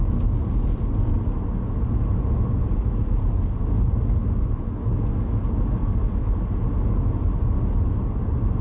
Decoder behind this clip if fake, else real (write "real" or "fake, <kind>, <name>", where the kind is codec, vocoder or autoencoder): real